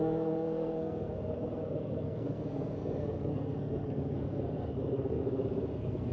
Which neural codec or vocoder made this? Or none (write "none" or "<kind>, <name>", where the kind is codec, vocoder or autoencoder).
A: codec, SNAC